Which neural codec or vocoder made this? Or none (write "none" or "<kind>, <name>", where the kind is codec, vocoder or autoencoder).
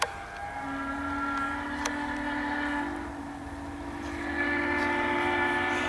none